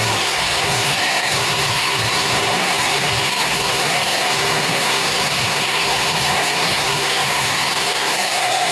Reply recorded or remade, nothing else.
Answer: remade